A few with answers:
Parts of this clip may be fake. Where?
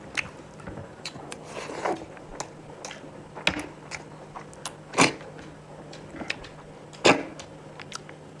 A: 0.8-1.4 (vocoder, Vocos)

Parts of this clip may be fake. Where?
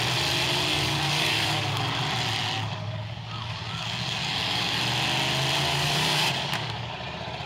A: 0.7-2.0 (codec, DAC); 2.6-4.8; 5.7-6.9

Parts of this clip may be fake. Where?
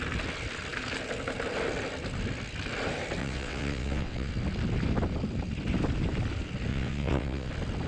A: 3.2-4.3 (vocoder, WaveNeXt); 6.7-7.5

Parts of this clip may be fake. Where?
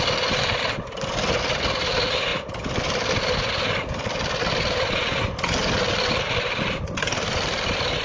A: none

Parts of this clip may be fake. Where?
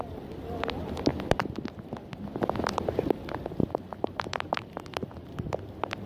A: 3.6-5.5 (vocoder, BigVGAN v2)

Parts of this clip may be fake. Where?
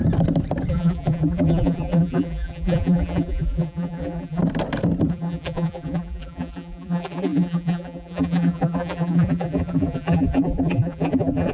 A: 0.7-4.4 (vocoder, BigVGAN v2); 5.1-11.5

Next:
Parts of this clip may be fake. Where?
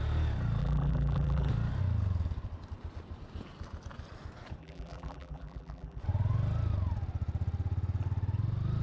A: 0.6-1.5 (vocoder, BigVGAN v2); 4.6-6.0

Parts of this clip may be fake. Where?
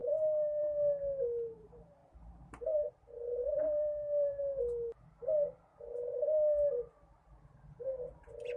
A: 2.0-2.9 (vocoder, BigVGAN v2); 3.4-4.4